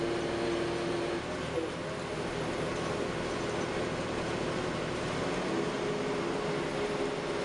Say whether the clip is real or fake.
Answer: real